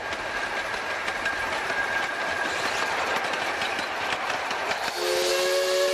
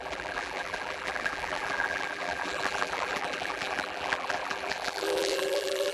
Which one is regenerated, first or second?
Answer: second